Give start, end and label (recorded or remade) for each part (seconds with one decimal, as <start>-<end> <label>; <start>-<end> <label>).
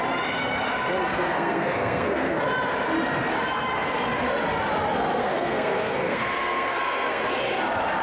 0.0-1.1 recorded; 1.1-2.4 remade; 2.4-5.2 recorded; 5.2-7.2 remade; 7.2-8.0 recorded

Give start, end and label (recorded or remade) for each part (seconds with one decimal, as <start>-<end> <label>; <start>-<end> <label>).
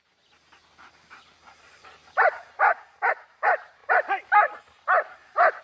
0.0-5.6 recorded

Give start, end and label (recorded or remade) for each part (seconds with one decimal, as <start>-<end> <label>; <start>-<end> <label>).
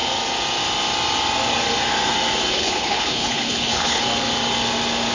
0.0-2.5 recorded; 2.5-4.0 remade; 4.0-5.1 recorded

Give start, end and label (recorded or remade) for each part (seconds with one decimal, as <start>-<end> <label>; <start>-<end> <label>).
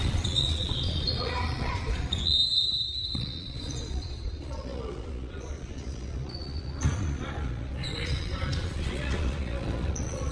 0.0-2.4 remade; 2.4-3.1 recorded; 3.1-10.3 remade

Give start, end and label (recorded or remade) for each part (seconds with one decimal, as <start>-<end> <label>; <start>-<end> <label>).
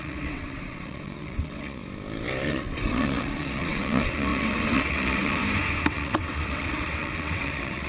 0.0-1.8 remade; 1.8-2.5 recorded; 2.5-5.4 remade; 5.4-5.9 recorded; 5.9-7.9 remade